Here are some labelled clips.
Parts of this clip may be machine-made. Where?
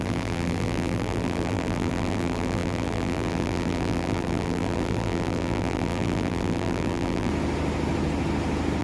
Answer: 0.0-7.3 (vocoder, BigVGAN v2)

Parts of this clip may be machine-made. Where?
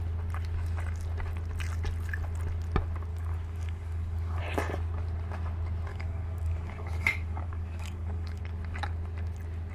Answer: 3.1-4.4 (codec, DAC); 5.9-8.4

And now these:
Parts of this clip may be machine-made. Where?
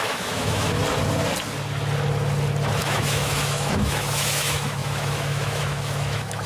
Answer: 0.0-0.8 (autoencoder, DAC-VAE); 2.8-6.5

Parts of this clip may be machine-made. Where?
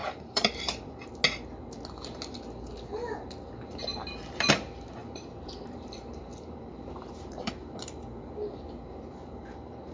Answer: 0.0-1.1 (vocoder, BigVGAN v2); 3.9-4.5; 5.0-7.5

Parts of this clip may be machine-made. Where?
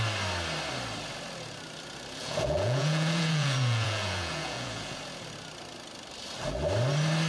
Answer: 2.2-5.0 (vocoder, Vocos)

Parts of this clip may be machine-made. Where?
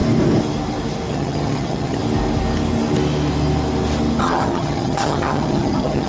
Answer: 1.1-2.0 (vocoder, HiFi-GAN); 4.2-6.1